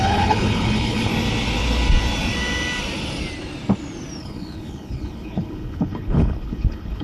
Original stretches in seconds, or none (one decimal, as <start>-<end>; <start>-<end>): 1.1-4.2